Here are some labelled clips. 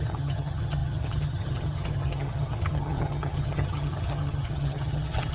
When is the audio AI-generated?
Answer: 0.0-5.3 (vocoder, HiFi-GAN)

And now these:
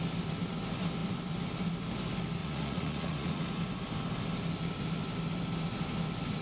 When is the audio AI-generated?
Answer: 2.4-3.5 (vocoder, Vocos)